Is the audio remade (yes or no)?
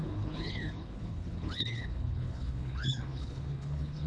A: yes